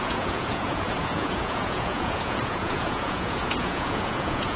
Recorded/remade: remade